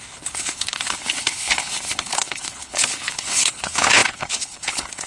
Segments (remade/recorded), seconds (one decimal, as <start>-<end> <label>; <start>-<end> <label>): 0.0-5.1 remade